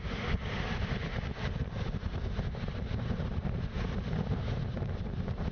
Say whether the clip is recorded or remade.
remade